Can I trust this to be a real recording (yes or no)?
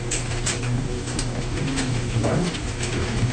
no